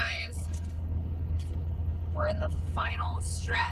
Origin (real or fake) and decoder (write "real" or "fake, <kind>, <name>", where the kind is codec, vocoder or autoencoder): fake, codec, HILCodec